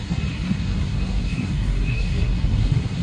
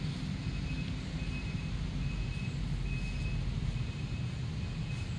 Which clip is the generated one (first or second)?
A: first